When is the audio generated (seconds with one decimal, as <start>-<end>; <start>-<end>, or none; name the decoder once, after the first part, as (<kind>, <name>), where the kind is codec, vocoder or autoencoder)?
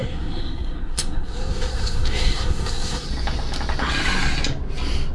0.0-3.1 (codec, SNAC)